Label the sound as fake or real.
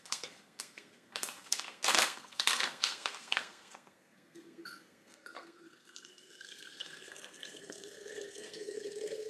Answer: fake